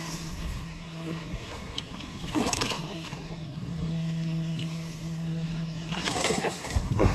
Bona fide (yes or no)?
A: no